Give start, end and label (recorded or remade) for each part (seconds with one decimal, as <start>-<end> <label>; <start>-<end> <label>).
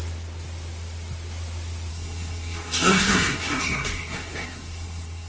0.0-1.9 recorded; 1.9-5.3 remade